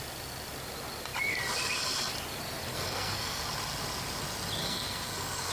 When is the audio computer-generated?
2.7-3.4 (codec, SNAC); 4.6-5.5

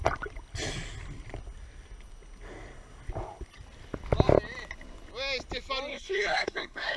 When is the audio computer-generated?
5.9-7.0 (codec, SNAC)

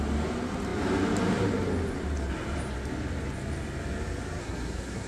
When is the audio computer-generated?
4.4-5.1 (codec, SNAC)

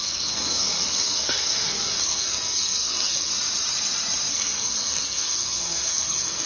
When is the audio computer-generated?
0.0-3.3 (codec, SNAC); 4.3-6.5